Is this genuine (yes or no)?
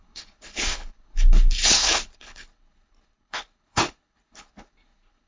no